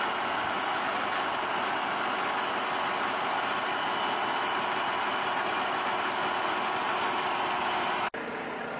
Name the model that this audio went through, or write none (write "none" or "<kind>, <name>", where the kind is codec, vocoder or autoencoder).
none